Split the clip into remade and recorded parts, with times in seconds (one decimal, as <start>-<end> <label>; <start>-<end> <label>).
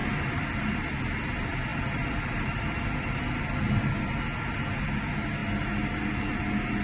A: 0.0-1.0 remade; 1.0-1.7 recorded; 1.7-4.4 remade; 4.4-6.8 recorded